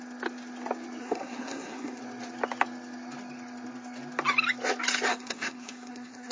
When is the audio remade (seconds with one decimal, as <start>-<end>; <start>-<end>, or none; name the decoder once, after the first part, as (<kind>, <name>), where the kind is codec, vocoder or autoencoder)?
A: 1.0-2.0 (codec, SNAC); 5.1-6.3